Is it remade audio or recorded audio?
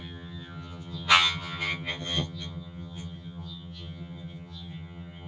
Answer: remade